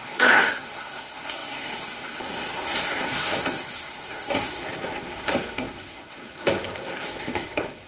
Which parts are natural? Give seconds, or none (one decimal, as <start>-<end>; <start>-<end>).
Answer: none